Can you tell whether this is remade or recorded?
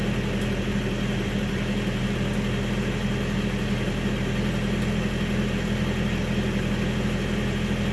recorded